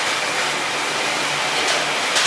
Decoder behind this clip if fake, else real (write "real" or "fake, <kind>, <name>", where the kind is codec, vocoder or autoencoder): real